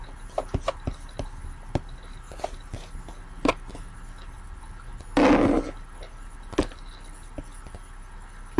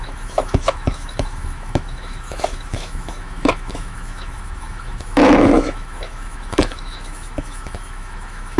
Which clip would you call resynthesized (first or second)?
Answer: second